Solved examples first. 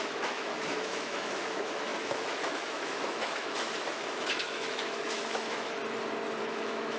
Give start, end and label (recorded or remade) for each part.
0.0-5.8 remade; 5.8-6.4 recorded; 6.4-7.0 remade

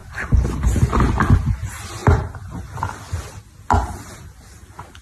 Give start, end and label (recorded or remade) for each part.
0.0-5.0 recorded

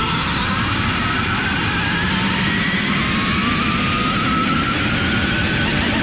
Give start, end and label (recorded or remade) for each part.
0.0-6.0 recorded

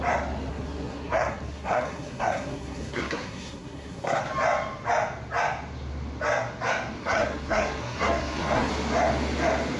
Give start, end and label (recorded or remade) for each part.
0.0-0.5 recorded; 0.5-4.2 remade; 4.2-7.0 recorded; 7.0-8.7 remade; 8.7-9.8 recorded